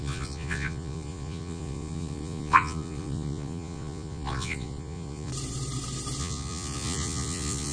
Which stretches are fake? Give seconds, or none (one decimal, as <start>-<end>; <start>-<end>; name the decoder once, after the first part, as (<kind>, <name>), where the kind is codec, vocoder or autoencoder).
0.0-5.3 (vocoder, Vocos); 6.2-7.7